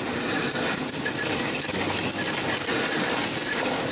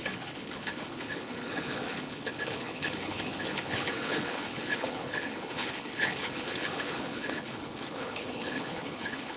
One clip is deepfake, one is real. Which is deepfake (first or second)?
second